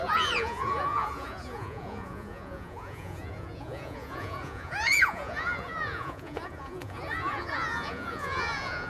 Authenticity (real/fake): fake